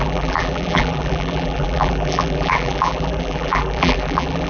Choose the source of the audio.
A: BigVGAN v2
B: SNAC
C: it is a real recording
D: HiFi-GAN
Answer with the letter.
A